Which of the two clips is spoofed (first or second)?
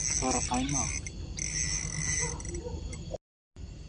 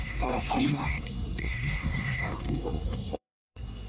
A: second